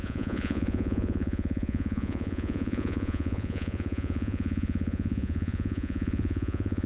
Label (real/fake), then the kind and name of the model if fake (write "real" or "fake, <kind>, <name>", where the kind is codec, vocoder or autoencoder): fake, vocoder, Vocos